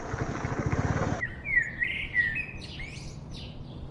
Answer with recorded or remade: recorded